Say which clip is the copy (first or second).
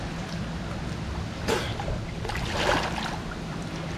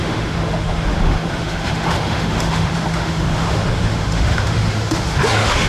second